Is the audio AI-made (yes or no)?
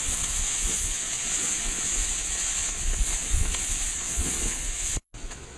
yes